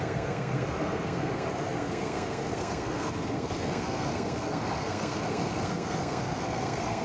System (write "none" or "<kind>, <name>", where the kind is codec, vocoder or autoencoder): codec, SNAC